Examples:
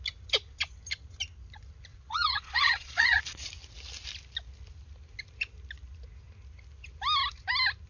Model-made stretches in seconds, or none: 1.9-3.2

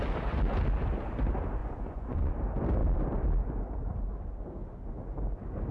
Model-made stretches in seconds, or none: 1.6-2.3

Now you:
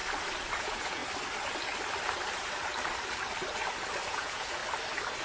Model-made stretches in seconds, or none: 0.6-1.0; 4.1-4.6